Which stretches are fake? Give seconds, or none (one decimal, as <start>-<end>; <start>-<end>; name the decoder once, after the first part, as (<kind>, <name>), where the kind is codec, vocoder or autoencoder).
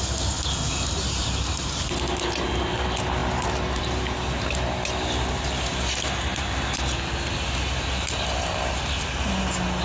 none